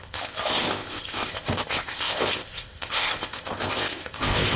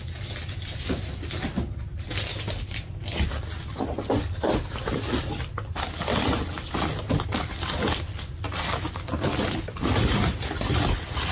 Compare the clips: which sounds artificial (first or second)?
first